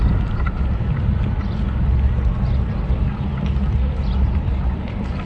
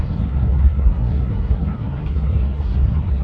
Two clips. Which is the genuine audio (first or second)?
first